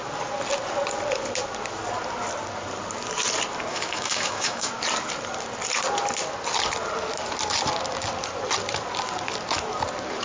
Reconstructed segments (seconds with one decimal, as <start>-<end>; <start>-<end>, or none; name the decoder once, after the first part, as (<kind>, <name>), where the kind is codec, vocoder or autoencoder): 3.7-4.7 (autoencoder, DAC-VAE)

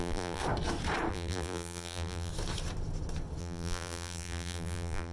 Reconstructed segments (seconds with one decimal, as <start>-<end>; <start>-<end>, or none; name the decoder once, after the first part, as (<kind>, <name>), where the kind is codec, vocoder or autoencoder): 0.0-0.4 (vocoder, BigVGAN v2); 1.1-2.3; 3.4-5.1

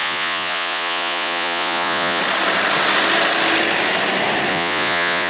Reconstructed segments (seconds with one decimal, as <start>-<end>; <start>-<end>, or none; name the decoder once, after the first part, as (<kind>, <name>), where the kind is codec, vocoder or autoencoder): 0.0-2.2 (vocoder, Vocos); 4.5-5.3